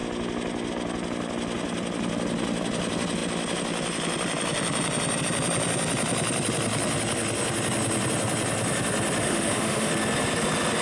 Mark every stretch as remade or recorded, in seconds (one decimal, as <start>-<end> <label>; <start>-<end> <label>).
0.0-9.2 recorded; 9.2-9.9 remade; 9.9-10.8 recorded